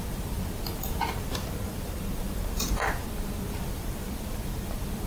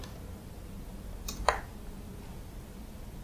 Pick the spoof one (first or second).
first